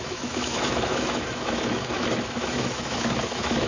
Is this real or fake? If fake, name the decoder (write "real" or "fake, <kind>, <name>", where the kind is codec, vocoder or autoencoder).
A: fake, autoencoder, DAC-VAE